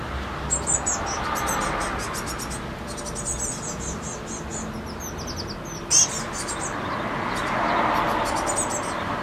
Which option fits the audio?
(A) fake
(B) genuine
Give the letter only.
B